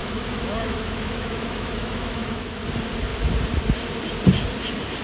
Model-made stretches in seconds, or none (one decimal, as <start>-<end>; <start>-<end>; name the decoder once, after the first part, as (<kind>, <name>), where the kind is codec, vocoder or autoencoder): 0.0-2.6 (autoencoder, DAC-VAE)